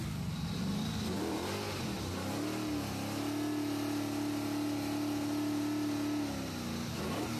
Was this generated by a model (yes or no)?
no